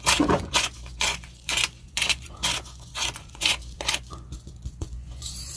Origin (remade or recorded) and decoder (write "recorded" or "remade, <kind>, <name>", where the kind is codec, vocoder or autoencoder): remade, vocoder, Vocos